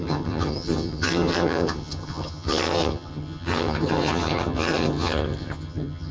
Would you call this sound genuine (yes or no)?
no